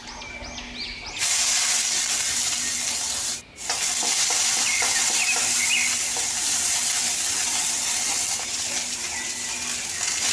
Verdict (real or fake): real